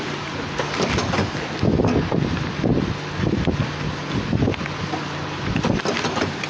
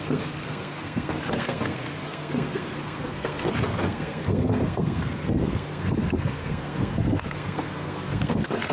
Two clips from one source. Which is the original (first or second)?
first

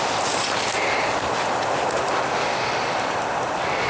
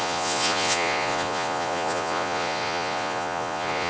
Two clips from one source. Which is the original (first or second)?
first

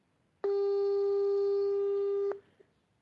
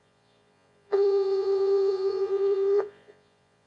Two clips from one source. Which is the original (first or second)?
first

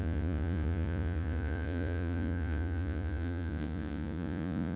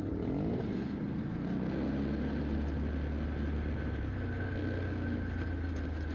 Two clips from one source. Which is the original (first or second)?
second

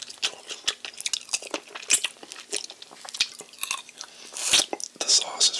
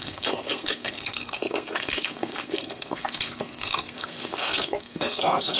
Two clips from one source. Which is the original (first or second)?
first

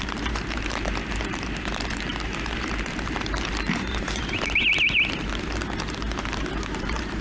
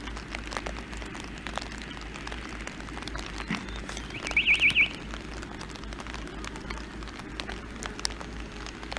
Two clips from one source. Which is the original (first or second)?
second